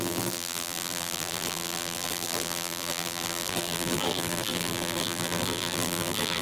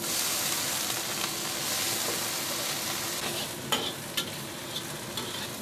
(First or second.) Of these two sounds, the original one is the second